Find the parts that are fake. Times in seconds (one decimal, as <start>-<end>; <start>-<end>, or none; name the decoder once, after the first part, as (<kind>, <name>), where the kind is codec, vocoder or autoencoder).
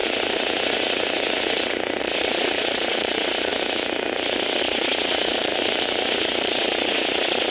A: 2.0-3.5 (vocoder, Vocos); 4.6-5.5; 6.1-7.5